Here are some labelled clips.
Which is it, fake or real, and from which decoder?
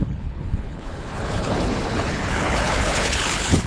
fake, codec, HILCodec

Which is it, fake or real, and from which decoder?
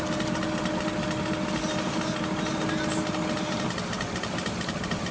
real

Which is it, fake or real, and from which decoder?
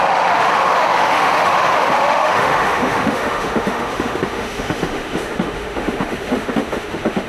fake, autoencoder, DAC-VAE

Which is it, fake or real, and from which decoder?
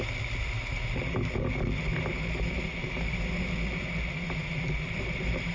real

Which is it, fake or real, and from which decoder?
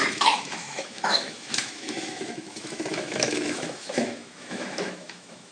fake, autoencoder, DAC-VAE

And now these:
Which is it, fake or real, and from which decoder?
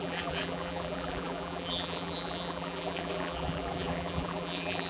fake, vocoder, BigVGAN v2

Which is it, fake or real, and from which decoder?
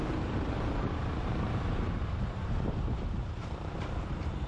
fake, vocoder, BigVGAN v2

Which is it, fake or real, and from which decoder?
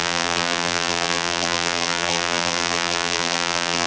fake, vocoder, BigVGAN v2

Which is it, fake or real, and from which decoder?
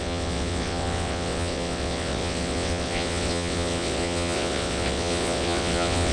fake, vocoder, WaveNeXt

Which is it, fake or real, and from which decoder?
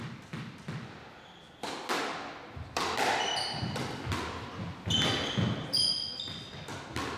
real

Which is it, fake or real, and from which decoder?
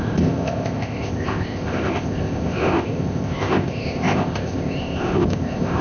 fake, codec, ZipCodec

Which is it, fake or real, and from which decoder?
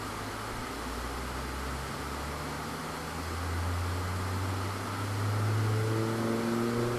real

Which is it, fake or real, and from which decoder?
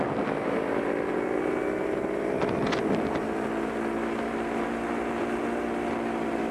real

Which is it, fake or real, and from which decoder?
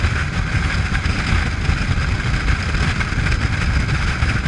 real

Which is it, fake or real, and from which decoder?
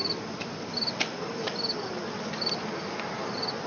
real